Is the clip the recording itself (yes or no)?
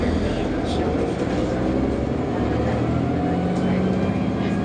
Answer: yes